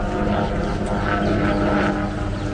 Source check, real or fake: real